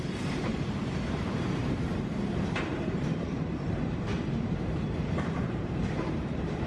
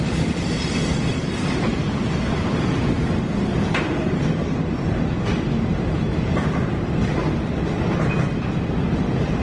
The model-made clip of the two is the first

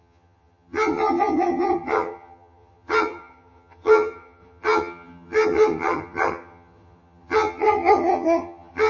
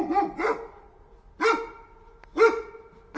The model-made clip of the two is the first